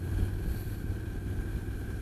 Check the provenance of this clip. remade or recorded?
remade